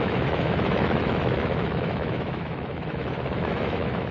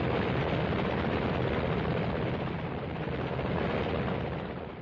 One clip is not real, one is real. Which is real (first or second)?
second